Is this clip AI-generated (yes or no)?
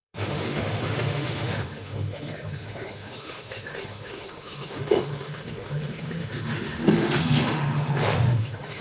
yes